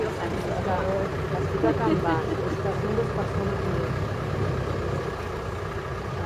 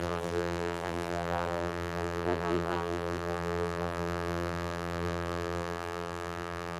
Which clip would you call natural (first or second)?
first